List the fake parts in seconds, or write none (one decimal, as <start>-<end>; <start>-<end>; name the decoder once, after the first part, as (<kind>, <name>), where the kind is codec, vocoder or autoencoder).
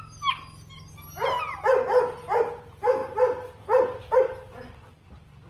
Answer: none